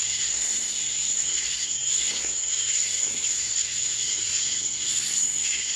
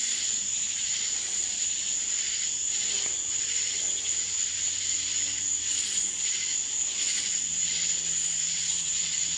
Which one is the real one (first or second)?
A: second